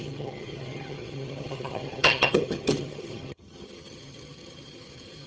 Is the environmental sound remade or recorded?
remade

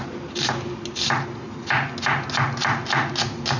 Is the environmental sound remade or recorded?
recorded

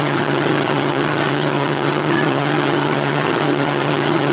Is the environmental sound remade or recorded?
remade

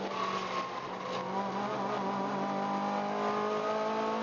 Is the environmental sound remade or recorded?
recorded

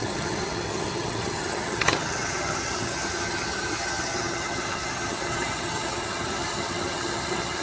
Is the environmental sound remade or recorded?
remade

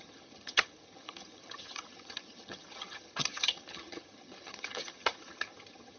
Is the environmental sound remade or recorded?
remade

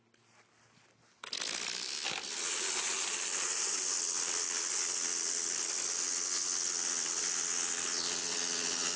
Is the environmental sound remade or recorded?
recorded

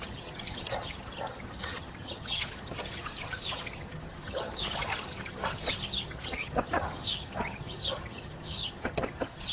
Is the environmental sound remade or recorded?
remade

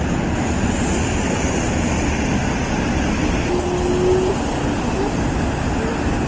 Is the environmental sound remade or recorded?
recorded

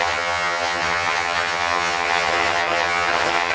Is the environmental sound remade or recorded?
remade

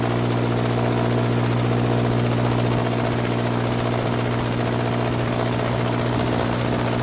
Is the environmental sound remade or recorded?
recorded